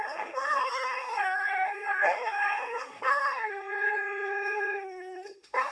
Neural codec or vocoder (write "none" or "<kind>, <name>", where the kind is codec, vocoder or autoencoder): codec, SNAC